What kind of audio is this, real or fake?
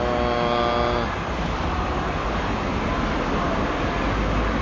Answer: real